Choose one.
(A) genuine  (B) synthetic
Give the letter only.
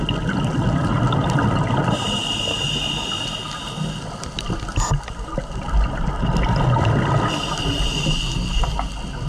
A